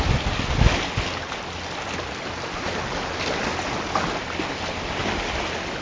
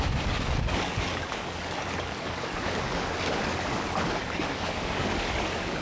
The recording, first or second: first